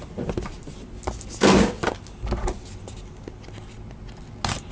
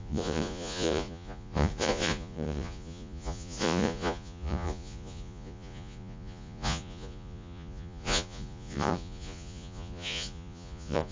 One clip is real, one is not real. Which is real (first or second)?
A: first